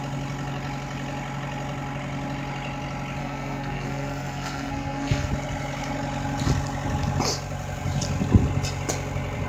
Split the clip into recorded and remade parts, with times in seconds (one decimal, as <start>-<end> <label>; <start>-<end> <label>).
0.0-3.2 recorded; 3.2-5.3 remade; 5.3-9.5 recorded